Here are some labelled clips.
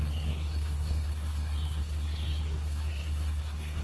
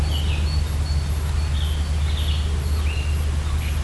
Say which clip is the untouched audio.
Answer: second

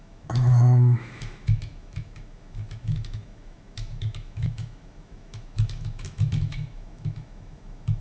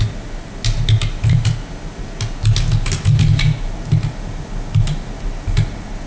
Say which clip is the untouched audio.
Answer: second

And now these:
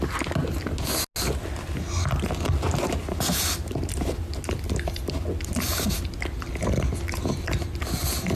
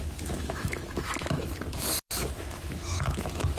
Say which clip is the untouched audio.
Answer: first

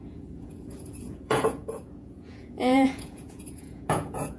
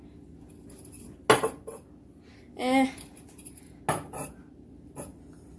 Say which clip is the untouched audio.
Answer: second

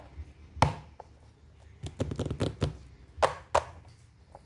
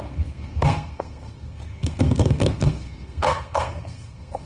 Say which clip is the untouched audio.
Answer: first